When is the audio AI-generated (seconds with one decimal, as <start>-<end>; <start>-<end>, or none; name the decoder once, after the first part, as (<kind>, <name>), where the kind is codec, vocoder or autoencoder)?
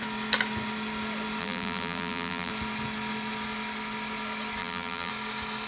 1.4-2.5 (vocoder, BigVGAN v2); 4.6-5.1